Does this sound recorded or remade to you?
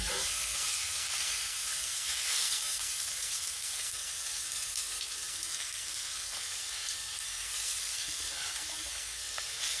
remade